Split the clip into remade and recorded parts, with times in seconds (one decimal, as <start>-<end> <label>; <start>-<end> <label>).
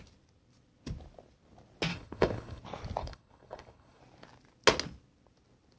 0.0-1.9 recorded; 1.9-2.6 remade; 2.6-3.0 recorded; 3.0-4.0 remade; 4.0-5.8 recorded